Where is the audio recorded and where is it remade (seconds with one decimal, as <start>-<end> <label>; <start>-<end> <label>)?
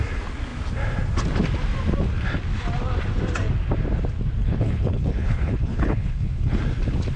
0.0-4.4 recorded; 4.4-6.6 remade; 6.6-7.2 recorded